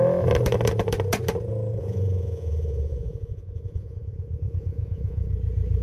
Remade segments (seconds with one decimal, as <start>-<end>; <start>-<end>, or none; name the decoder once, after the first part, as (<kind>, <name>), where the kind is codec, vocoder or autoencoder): 1.8-5.3 (vocoder, Vocos)